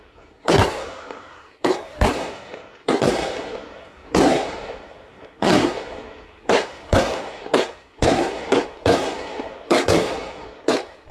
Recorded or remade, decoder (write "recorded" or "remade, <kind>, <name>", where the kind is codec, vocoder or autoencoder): remade, codec, SNAC